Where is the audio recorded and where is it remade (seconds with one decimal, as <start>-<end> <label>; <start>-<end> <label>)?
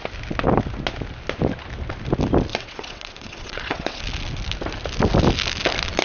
0.0-2.5 recorded; 2.5-4.0 remade; 4.0-6.0 recorded